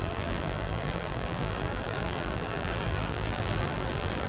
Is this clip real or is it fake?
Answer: fake